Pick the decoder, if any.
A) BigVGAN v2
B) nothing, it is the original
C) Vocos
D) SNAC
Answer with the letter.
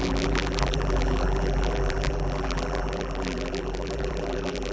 A